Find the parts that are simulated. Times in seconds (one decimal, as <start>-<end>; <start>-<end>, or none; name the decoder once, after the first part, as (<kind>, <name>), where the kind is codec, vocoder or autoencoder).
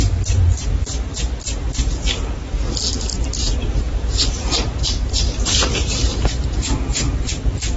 3.5-7.2 (vocoder, BigVGAN v2)